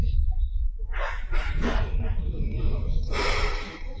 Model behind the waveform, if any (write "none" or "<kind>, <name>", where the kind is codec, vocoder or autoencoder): none